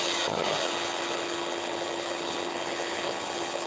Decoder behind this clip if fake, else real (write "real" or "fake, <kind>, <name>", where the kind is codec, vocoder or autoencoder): fake, vocoder, HiFi-GAN